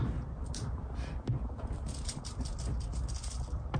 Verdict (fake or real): real